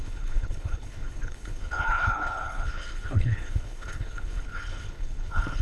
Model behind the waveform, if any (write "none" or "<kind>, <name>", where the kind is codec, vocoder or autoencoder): codec, HILCodec